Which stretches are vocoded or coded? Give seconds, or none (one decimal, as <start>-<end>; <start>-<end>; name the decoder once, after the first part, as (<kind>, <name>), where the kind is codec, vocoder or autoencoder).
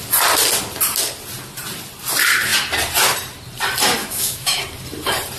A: 4.0-4.6 (autoencoder, DAC-VAE)